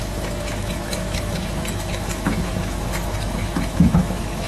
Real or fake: fake